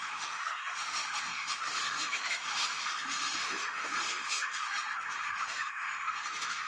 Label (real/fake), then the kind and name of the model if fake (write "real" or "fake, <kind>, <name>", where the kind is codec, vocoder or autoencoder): fake, autoencoder, DAC-VAE